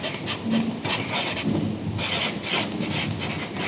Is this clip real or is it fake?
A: real